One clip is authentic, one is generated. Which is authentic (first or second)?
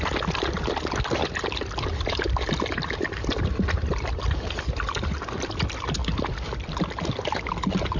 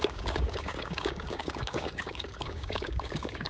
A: first